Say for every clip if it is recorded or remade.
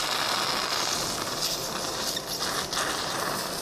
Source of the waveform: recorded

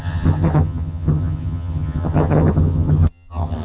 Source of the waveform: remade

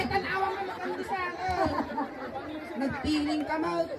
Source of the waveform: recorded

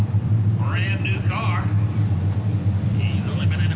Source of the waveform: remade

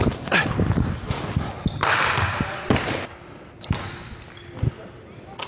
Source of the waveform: recorded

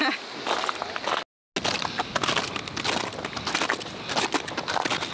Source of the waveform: recorded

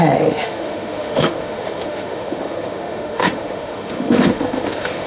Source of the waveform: remade